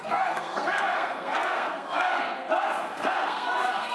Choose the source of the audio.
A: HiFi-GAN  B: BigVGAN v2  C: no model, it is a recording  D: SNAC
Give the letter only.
D